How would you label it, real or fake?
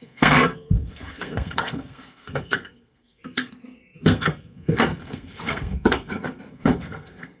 fake